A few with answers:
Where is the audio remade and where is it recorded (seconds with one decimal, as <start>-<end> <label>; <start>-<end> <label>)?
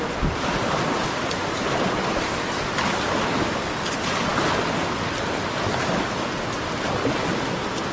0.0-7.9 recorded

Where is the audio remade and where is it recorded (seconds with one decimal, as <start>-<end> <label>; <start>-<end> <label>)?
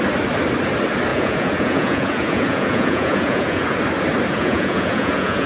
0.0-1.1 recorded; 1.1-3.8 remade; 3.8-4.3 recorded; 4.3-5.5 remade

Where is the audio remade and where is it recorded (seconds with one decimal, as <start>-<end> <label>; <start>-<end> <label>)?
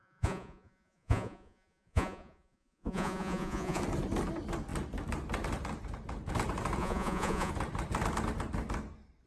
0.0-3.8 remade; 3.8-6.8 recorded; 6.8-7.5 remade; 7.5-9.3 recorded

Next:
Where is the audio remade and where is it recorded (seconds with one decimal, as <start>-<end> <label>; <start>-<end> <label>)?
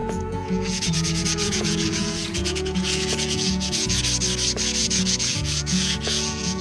0.0-4.0 remade; 4.0-4.8 recorded; 4.8-6.6 remade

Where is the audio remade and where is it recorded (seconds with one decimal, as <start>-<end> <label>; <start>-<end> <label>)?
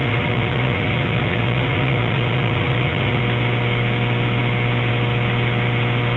0.0-3.2 remade; 3.2-6.2 recorded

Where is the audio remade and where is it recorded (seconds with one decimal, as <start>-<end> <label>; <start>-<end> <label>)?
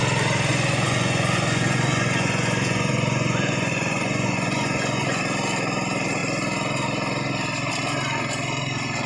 0.0-0.5 recorded; 0.5-5.2 remade; 5.2-9.1 recorded